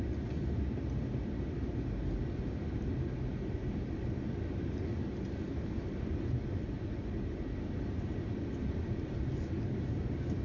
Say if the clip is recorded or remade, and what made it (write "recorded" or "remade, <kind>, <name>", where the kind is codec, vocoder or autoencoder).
recorded